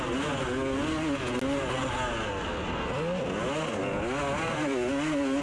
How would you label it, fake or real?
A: real